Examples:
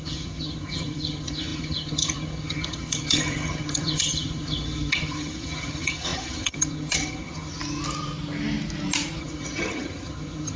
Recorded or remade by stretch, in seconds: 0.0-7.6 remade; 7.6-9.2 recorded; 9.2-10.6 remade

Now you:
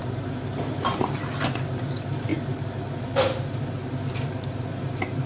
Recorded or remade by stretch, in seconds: 0.0-5.3 recorded

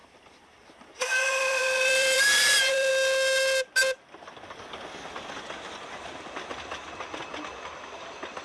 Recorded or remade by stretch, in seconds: 0.0-2.9 remade; 2.9-6.5 recorded; 6.5-7.2 remade; 7.2-8.4 recorded

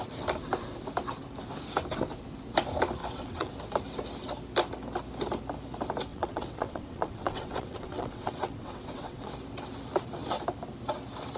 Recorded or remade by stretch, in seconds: 0.0-3.0 recorded; 3.0-3.5 remade; 3.5-6.1 recorded; 6.1-9.3 remade; 9.3-11.4 recorded